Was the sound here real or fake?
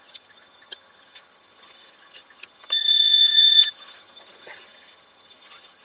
fake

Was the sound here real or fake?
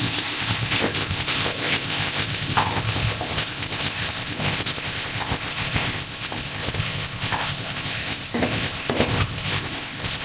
fake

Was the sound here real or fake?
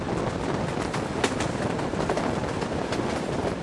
real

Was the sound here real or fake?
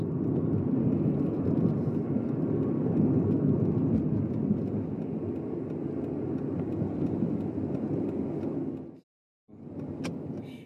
real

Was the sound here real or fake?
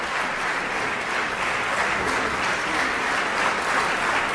real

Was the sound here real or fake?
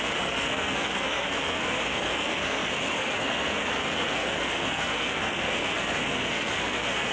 fake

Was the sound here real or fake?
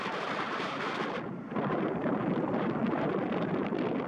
real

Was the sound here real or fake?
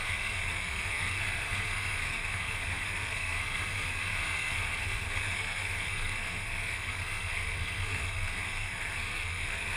fake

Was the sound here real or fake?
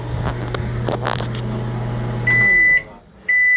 real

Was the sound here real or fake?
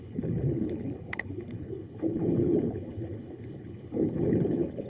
fake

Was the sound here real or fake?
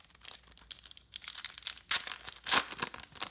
real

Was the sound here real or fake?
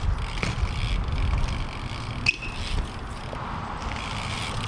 real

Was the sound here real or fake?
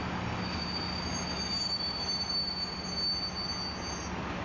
real